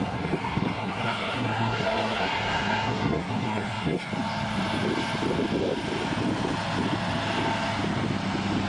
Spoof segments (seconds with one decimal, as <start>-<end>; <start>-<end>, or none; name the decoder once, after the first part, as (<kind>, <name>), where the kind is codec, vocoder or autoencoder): 0.0-4.1 (codec, SNAC)